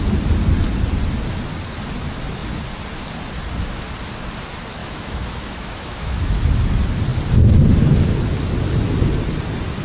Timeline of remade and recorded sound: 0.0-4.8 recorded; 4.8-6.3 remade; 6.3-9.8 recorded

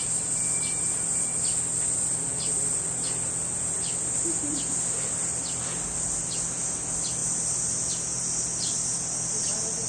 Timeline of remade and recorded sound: 0.0-9.9 recorded

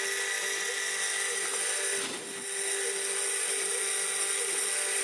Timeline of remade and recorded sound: 0.0-5.0 recorded